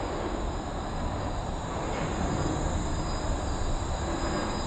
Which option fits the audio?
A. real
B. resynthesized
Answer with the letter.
A